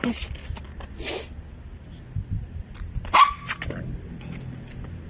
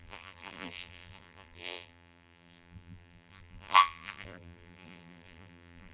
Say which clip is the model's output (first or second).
second